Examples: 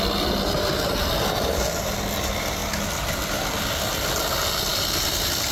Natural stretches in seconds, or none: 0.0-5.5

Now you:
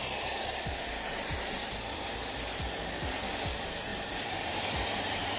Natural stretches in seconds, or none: 0.0-3.9; 4.6-5.4

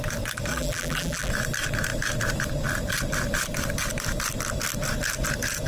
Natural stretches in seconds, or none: 0.0-0.5; 1.3-5.7

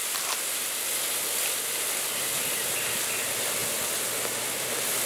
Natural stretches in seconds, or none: 3.6-4.2

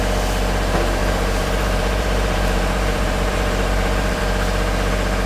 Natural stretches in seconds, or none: 0.0-1.0; 4.2-5.3